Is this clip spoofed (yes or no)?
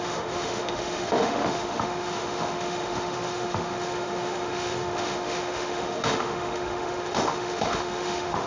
yes